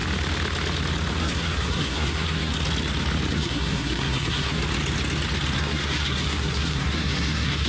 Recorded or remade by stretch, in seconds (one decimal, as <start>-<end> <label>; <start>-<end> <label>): 0.0-1.2 recorded; 1.2-2.5 remade; 2.5-3.3 recorded; 3.3-4.6 remade; 4.6-5.6 recorded; 5.6-7.7 remade